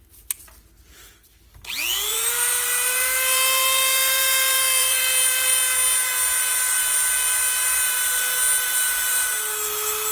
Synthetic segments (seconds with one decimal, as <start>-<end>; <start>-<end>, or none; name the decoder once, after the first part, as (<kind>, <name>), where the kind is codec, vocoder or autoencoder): 2.1-5.6 (vocoder, BigVGAN v2)